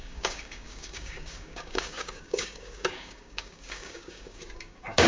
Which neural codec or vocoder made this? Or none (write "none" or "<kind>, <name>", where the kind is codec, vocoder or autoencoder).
codec, DAC